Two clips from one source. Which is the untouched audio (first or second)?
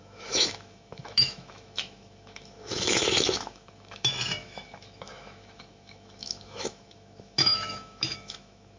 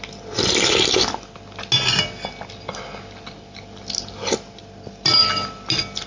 second